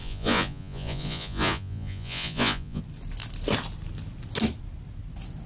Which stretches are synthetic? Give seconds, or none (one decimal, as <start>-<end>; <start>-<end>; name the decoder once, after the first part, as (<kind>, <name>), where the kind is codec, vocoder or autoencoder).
0.0-2.8 (vocoder, Vocos)